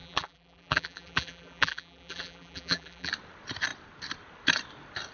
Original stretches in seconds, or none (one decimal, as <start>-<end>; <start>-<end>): 3.1-5.1